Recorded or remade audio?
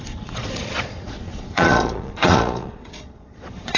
remade